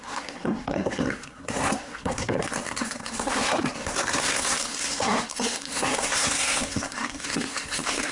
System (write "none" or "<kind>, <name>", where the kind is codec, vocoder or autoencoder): codec, SNAC